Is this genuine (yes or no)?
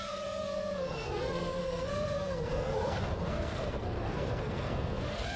no